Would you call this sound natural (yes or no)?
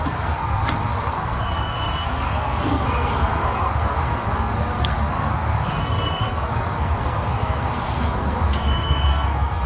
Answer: no